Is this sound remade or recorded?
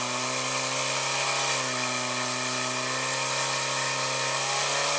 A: recorded